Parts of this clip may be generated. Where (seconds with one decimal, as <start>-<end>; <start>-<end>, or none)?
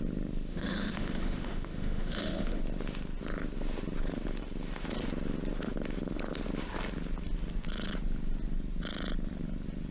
0.5-2.6